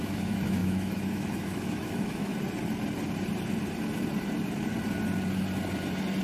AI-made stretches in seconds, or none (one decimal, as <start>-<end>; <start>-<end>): 0.0-2.3